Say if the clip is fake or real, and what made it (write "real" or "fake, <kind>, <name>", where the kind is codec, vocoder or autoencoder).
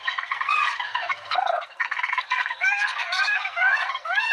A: fake, codec, SNAC